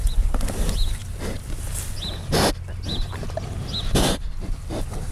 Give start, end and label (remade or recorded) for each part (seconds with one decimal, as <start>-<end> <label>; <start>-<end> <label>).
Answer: 0.0-5.1 recorded